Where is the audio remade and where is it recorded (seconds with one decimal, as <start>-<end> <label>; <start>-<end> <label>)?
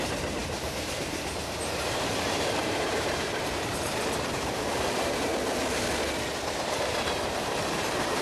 0.0-5.3 remade; 5.3-6.8 recorded; 6.8-8.2 remade